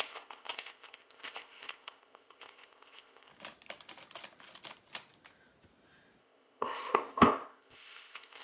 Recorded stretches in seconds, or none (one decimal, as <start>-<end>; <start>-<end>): 3.3-6.2